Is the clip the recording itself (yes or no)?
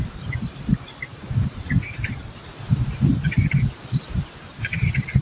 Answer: yes